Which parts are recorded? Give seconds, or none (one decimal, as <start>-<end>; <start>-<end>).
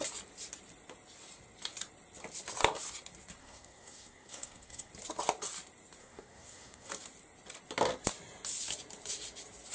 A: 0.0-3.4; 4.9-6.0; 6.9-9.7